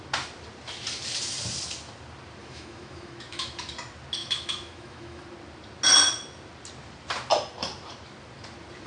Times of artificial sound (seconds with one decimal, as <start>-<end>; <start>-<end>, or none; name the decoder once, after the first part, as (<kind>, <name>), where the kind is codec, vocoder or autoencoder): 2.4-3.7 (autoencoder, DAC-VAE); 4.2-5.2